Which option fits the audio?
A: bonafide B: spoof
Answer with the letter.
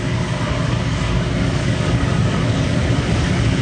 B